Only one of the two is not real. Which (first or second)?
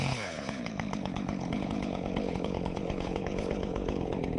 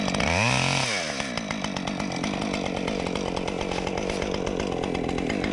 first